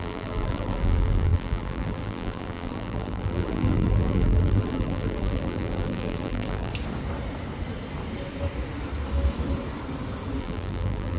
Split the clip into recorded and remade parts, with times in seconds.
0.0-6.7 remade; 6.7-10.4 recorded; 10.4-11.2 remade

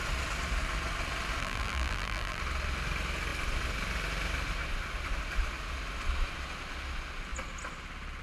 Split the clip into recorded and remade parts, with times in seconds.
0.0-1.4 recorded; 1.4-2.4 remade; 2.4-8.2 recorded

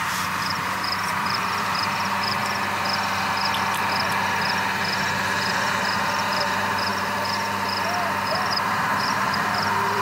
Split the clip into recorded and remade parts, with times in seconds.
0.0-2.4 remade; 2.4-5.5 recorded; 5.5-10.0 remade

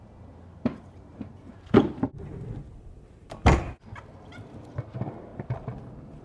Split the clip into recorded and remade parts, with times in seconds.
0.0-1.1 recorded; 1.1-4.8 remade; 4.8-5.3 recorded; 5.3-6.2 remade